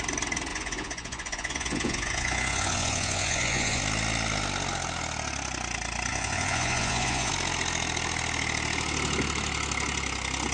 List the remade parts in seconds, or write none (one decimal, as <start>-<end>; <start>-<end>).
0.5-3.8; 6.1-7.3